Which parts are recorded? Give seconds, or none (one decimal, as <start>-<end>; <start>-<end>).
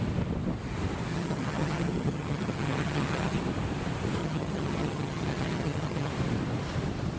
0.0-1.1; 3.4-4.2; 6.1-7.2